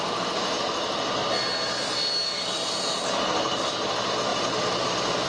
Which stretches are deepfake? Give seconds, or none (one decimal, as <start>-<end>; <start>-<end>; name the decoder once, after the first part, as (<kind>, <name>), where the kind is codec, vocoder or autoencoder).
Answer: none